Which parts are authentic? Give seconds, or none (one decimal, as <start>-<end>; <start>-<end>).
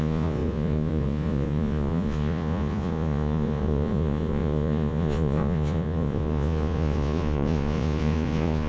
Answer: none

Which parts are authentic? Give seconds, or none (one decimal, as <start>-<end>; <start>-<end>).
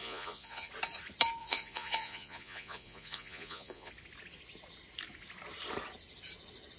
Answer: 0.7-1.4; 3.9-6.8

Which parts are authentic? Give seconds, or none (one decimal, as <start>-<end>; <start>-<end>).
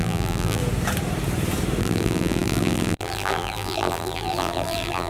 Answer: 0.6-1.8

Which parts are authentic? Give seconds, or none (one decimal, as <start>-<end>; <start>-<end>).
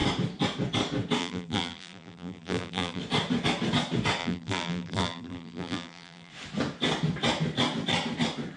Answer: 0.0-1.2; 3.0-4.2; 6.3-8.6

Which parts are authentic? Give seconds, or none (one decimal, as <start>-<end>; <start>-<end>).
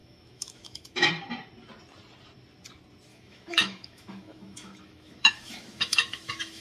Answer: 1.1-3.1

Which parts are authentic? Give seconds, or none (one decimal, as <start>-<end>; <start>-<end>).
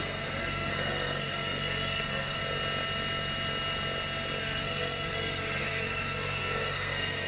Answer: 2.4-4.4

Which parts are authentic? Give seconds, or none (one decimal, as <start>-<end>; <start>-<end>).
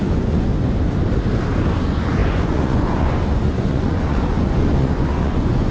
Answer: 0.5-1.8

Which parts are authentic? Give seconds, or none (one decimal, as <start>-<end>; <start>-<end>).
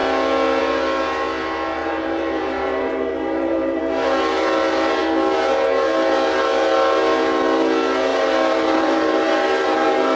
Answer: 0.0-1.8; 3.8-8.1